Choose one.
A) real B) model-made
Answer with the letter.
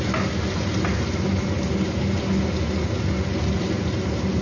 A